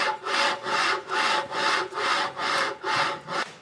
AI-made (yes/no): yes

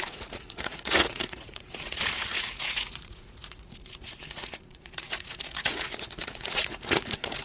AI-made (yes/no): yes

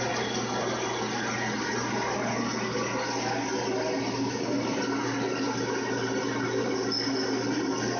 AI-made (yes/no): no